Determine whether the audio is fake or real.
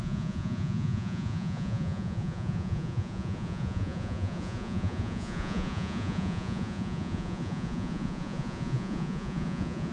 fake